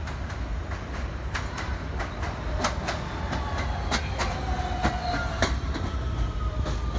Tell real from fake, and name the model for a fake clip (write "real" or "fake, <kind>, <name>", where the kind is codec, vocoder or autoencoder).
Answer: real